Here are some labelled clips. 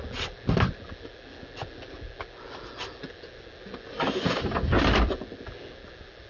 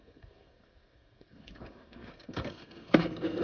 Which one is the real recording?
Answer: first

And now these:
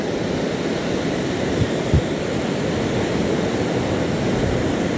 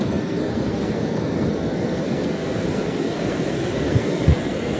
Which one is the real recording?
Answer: first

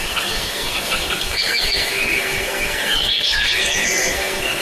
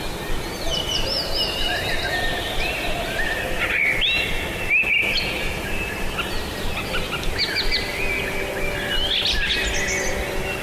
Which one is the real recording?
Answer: second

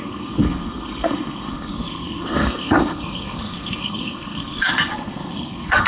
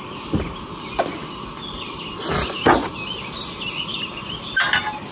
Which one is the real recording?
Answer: second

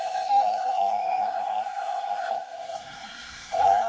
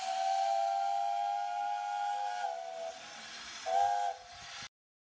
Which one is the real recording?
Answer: second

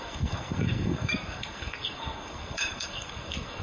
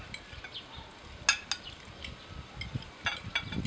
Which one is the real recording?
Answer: second